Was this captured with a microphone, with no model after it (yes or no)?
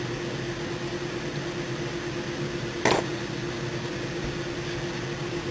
yes